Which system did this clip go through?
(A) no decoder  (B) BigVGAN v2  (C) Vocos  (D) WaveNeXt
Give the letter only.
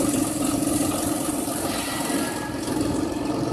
B